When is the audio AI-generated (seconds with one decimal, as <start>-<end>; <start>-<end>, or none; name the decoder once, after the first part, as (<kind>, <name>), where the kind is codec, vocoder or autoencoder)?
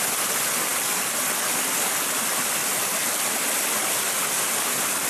none